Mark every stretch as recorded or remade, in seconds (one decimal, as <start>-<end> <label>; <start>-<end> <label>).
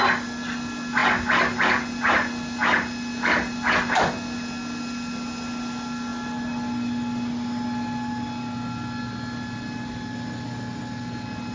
0.0-11.5 recorded